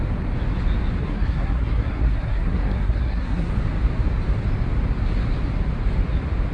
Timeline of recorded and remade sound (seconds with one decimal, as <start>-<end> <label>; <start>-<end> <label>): 0.0-1.0 recorded; 1.0-3.5 remade; 3.5-6.5 recorded